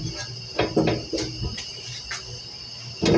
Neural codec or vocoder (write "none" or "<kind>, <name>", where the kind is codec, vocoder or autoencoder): none